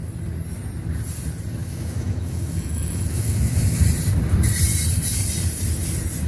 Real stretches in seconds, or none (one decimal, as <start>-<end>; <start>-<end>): 0.0-1.6; 3.8-6.3